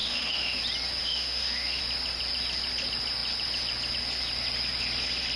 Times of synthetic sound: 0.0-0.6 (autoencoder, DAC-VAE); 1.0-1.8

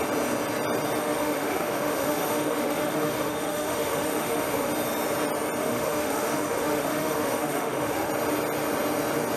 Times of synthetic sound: 1.0-4.7 (autoencoder, DAC-VAE); 5.6-8.1

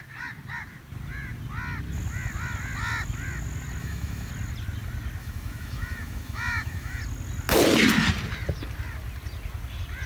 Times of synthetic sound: 3.8-4.3 (autoencoder, DAC-VAE); 5.2-7.0

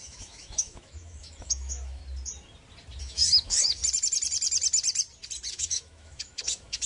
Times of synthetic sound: 0.0-2.0 (autoencoder, DAC-VAE); 3.0-3.8; 5.5-6.9